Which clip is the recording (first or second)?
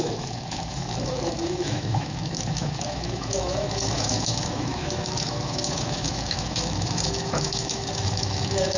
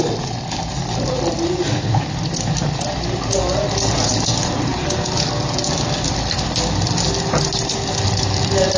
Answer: second